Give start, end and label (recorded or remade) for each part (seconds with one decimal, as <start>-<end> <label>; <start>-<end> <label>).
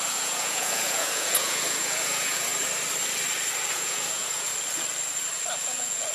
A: 0.0-2.5 remade; 2.5-3.7 recorded; 3.7-4.5 remade; 4.5-5.6 recorded; 5.6-6.1 remade